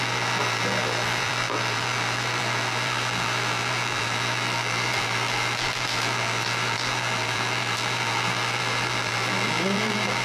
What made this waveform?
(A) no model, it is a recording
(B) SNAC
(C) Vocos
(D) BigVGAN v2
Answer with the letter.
D